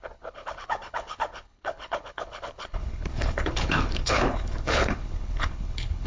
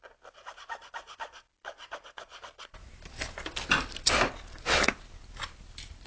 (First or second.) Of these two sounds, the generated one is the first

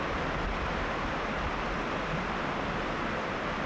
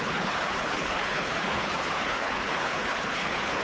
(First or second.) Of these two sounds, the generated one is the second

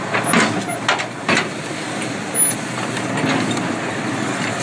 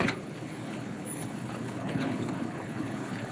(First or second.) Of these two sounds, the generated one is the second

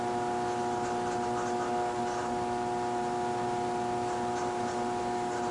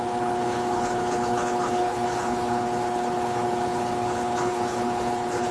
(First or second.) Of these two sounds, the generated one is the second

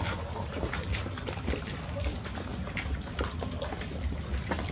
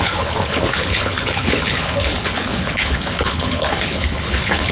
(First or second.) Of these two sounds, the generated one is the second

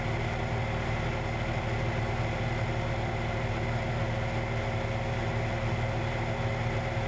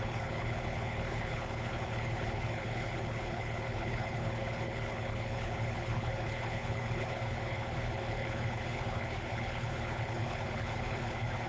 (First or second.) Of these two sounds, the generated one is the second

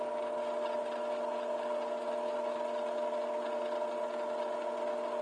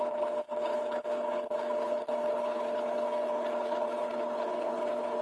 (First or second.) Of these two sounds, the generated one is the second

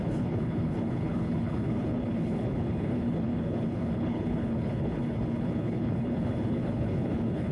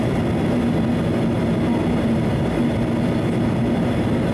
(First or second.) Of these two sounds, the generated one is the first